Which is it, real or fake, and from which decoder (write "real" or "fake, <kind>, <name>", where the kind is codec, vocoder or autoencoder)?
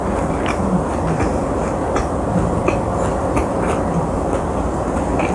real